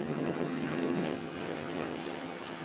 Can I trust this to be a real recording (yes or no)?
no